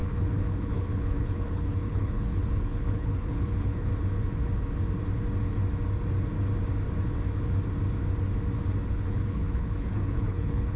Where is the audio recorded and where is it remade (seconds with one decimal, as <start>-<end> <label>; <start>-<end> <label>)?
0.0-3.9 remade; 3.9-8.9 recorded; 8.9-10.8 remade